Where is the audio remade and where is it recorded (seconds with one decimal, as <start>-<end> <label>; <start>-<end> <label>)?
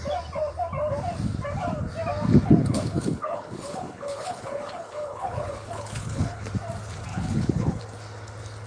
0.0-2.6 recorded; 2.6-6.5 remade; 6.5-7.1 recorded; 7.1-7.8 remade; 7.8-8.7 recorded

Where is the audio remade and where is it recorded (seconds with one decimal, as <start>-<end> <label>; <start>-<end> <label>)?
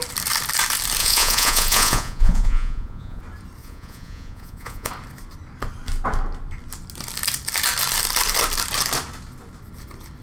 0.0-1.0 recorded; 1.0-3.2 remade; 3.2-3.6 recorded; 3.6-4.9 remade; 4.9-10.2 recorded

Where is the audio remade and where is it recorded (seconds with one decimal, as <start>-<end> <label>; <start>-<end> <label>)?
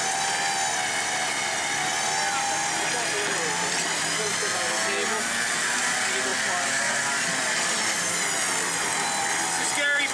0.0-10.1 recorded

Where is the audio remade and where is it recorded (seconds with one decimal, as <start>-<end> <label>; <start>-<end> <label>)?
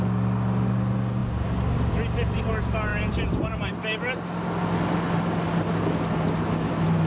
0.0-7.1 recorded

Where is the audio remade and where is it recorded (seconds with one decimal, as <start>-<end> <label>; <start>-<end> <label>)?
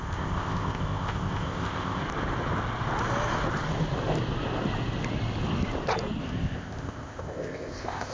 0.0-2.0 remade; 2.0-6.2 recorded; 6.2-8.1 remade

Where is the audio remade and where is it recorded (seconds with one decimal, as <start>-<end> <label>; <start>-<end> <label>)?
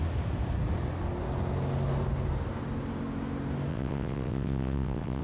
0.0-3.7 recorded; 3.7-5.2 remade